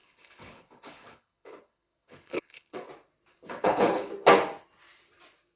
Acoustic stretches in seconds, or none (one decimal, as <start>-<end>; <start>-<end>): 2.9-3.3; 4.1-5.6